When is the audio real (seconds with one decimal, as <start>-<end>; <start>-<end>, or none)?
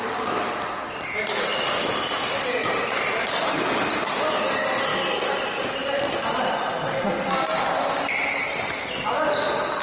0.0-9.8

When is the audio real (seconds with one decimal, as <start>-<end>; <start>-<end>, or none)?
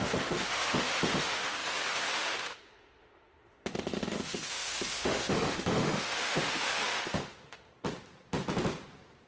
7.7-9.3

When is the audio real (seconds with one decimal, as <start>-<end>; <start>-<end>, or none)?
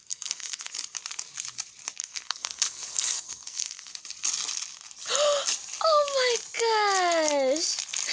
0.7-2.0; 3.9-8.1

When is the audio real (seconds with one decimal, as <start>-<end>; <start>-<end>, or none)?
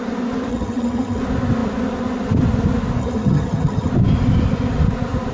0.0-0.5; 1.2-3.0; 3.9-5.3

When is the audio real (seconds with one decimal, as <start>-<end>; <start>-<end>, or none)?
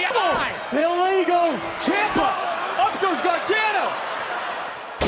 0.0-0.8; 3.9-5.1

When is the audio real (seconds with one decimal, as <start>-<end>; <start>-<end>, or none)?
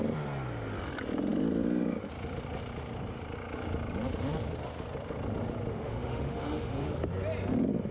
0.0-5.7; 6.9-7.9